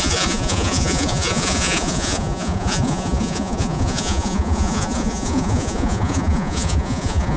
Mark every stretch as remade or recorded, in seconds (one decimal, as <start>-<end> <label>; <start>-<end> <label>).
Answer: 0.0-7.4 remade